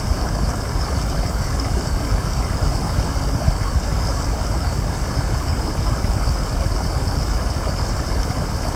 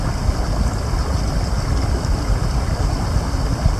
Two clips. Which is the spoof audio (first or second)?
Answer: first